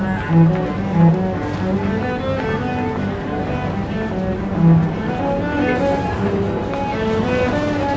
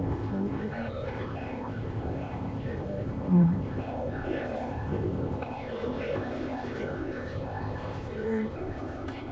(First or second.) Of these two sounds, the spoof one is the second